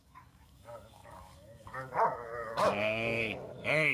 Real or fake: fake